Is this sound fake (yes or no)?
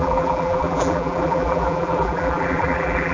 yes